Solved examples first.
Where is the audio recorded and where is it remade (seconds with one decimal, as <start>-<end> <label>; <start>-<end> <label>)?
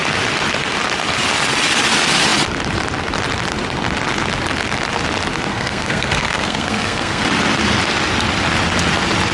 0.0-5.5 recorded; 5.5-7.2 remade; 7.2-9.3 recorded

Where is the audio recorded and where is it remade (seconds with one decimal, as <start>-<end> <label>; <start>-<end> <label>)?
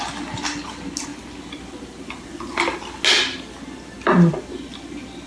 0.0-5.3 recorded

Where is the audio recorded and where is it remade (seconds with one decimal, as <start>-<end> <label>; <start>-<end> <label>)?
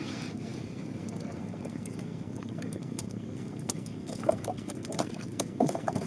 0.0-6.1 remade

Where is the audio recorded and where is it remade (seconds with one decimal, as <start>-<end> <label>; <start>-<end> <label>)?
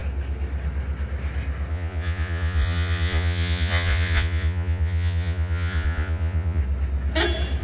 0.0-1.7 recorded; 1.7-6.6 remade; 6.6-7.6 recorded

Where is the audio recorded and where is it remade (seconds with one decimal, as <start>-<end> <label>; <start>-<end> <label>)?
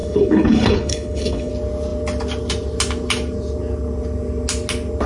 0.0-1.5 remade; 1.5-5.1 recorded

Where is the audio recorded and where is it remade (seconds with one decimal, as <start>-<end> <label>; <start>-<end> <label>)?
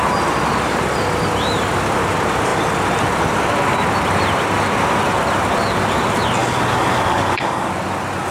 0.0-6.4 recorded; 6.4-7.7 remade; 7.7-8.3 recorded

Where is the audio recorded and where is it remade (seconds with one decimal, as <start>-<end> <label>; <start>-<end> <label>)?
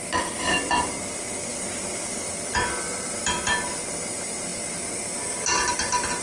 0.0-4.5 remade; 4.5-5.7 recorded; 5.7-6.2 remade